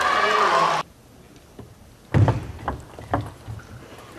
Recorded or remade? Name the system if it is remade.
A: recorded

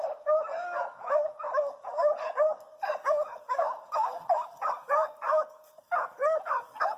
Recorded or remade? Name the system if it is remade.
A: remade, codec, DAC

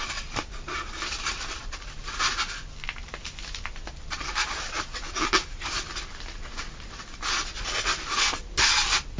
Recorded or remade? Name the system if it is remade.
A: recorded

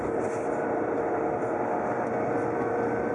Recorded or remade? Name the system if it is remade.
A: remade, vocoder, BigVGAN v2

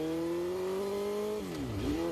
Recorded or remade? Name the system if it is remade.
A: recorded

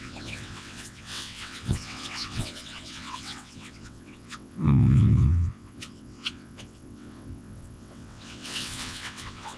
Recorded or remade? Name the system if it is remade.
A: remade, vocoder, WaveNeXt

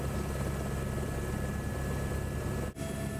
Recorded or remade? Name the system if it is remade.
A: recorded